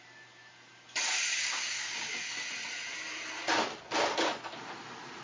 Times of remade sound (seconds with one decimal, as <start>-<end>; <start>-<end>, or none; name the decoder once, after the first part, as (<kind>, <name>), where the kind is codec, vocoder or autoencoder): 1.3-2.4 (codec, DAC)

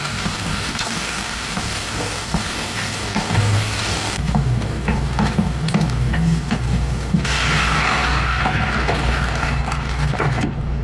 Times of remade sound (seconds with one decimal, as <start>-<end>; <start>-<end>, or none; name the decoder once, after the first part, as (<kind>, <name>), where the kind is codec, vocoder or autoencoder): 0.0-10.8 (codec, DAC)

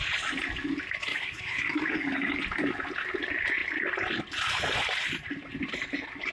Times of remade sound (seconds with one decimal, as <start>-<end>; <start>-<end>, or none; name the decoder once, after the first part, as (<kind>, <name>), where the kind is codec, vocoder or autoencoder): 1.1-2.4 (codec, DAC)

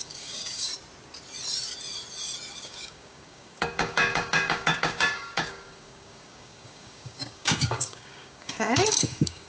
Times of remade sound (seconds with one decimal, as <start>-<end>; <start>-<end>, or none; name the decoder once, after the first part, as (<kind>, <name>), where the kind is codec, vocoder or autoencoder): 0.0-0.7 (codec, DAC); 2.6-9.5

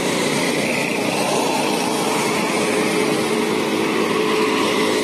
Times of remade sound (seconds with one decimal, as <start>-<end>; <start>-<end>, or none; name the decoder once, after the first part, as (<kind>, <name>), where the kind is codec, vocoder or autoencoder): none

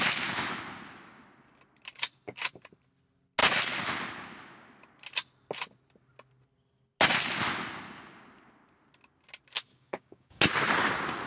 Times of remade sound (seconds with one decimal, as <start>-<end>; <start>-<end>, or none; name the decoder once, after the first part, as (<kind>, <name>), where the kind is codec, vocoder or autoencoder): 9.7-10.4 (codec, DAC)